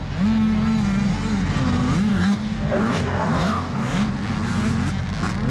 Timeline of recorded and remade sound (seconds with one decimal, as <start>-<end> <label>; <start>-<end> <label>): 0.0-2.1 recorded; 2.1-4.1 remade; 4.1-5.5 recorded